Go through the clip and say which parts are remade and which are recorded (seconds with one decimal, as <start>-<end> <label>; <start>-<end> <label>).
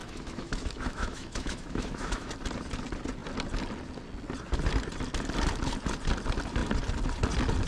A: 0.0-2.3 remade; 2.3-7.7 recorded